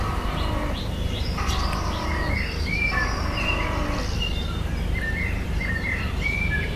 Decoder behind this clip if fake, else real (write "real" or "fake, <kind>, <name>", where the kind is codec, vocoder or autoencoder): real